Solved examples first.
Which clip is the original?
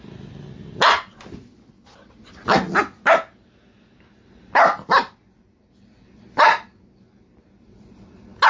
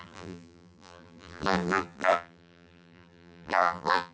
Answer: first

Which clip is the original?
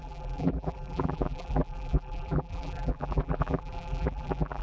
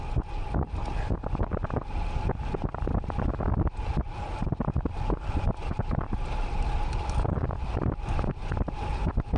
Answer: second